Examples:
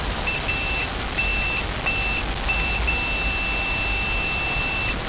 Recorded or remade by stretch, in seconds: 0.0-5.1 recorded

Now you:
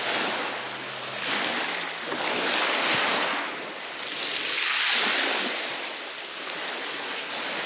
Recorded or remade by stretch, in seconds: 0.0-6.8 recorded; 6.8-7.3 remade; 7.3-7.7 recorded

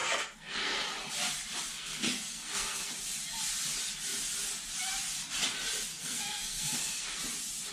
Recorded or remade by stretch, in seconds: 0.0-0.8 remade; 0.8-1.7 recorded; 1.7-2.9 remade; 2.9-5.9 recorded; 5.9-7.2 remade; 7.2-7.7 recorded

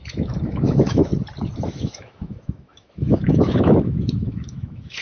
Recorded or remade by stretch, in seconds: 0.0-1.1 remade; 1.1-1.7 recorded; 1.7-5.0 remade

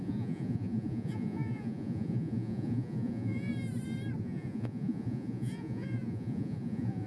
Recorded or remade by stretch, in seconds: 0.0-3.5 remade; 3.5-4.2 recorded; 4.2-7.1 remade

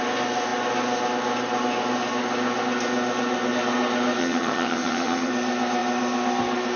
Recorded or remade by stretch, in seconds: 0.0-4.2 recorded; 4.2-5.3 remade; 5.3-6.8 recorded

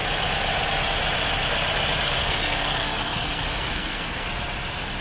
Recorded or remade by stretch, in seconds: 0.0-2.2 recorded; 2.2-4.3 remade; 4.3-5.0 recorded

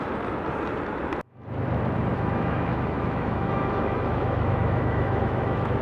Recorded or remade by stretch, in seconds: 0.0-2.1 recorded; 2.1-5.8 remade